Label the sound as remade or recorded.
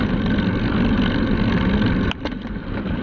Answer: recorded